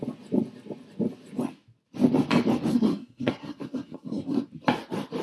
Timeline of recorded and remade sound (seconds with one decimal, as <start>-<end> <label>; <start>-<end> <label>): 0.0-2.7 recorded; 2.7-4.5 remade; 4.5-5.2 recorded